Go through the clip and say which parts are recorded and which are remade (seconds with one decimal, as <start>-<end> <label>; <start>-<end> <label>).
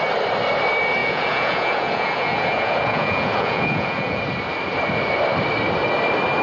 0.0-1.0 recorded; 1.0-4.2 remade; 4.2-6.4 recorded